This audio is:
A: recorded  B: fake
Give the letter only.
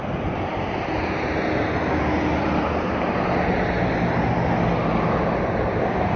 A